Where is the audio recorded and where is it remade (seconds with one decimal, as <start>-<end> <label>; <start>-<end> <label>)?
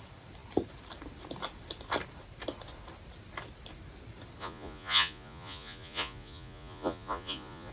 0.0-4.4 recorded; 4.4-7.7 remade